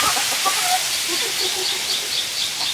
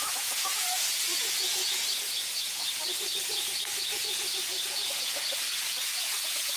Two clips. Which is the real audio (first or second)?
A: first